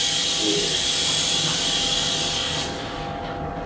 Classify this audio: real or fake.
fake